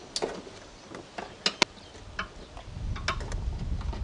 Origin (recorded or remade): recorded